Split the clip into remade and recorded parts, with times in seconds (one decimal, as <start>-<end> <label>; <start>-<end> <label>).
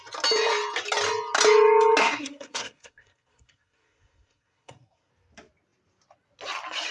0.0-2.0 recorded; 2.0-5.1 remade; 5.1-6.9 recorded